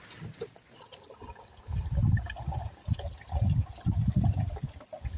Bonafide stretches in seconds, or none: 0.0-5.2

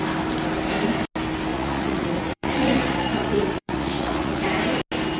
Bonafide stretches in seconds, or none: 0.0-1.5; 4.4-5.2